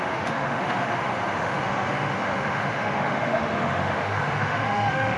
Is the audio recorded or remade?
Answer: remade